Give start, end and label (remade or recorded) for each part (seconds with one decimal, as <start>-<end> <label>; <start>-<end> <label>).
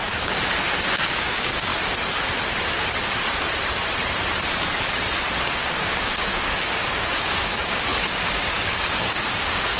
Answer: 0.0-0.8 recorded; 0.8-1.7 remade; 1.7-5.4 recorded; 5.4-9.8 remade